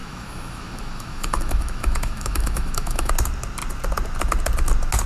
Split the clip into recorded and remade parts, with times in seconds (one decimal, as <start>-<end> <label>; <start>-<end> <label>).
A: 0.0-3.1 remade; 3.1-5.1 recorded